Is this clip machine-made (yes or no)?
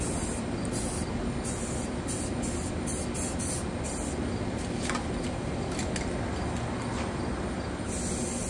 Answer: no